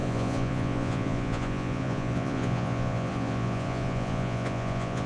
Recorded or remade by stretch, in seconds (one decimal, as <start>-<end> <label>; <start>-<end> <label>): 0.0-5.1 remade